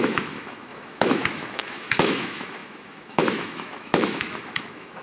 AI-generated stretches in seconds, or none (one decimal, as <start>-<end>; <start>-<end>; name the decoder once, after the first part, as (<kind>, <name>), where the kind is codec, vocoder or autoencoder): 0.0-5.0 (autoencoder, DAC-VAE)

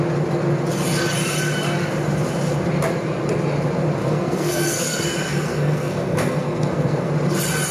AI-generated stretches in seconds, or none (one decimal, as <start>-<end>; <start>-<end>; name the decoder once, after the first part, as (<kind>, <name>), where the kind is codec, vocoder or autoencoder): 4.0-7.1 (codec, SNAC)

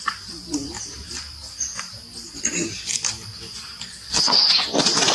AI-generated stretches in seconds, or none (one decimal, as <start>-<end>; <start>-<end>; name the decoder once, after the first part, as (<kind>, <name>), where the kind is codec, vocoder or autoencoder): none

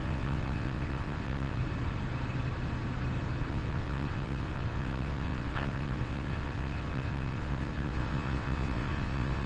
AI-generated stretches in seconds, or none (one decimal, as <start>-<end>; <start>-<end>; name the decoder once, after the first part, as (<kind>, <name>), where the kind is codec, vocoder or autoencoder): 0.0-1.6 (vocoder, WaveNeXt); 3.5-9.5

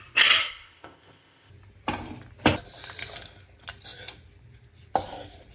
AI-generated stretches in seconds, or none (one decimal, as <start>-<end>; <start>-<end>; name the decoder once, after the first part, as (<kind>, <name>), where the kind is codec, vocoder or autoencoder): 0.4-1.5 (codec, ZipCodec)

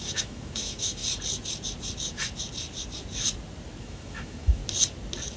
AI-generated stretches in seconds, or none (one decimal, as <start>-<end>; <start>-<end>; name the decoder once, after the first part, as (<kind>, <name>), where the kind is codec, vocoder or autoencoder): 0.0-1.0 (autoencoder, DAC-VAE); 3.8-4.6